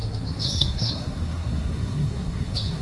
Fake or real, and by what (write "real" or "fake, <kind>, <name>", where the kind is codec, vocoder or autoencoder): fake, codec, SNAC